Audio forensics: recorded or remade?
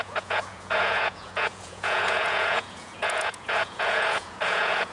remade